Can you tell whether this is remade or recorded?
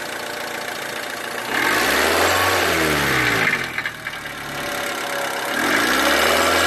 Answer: recorded